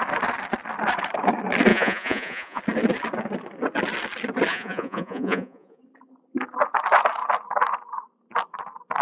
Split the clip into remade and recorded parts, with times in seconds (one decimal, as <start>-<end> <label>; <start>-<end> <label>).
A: 0.0-1.7 recorded; 1.7-2.6 remade; 2.6-4.5 recorded; 4.5-5.8 remade; 5.8-9.0 recorded